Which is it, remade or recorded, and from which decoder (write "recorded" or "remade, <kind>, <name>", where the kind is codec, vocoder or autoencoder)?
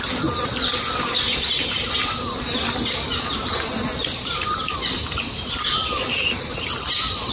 recorded